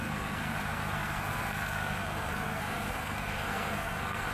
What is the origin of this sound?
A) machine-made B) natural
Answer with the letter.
A